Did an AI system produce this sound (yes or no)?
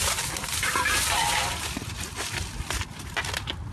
no